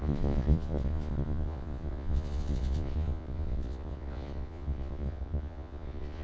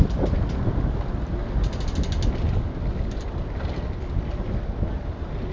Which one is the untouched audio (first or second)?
second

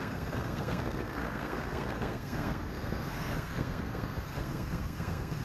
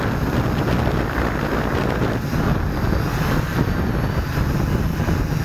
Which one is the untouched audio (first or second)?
second